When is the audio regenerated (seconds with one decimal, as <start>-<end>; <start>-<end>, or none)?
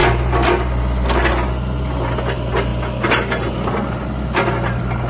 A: none